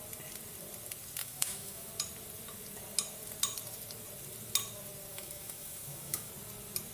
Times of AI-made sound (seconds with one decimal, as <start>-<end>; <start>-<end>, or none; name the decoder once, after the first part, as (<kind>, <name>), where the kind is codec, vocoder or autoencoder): 1.2-1.9 (autoencoder, DAC-VAE); 5.1-6.3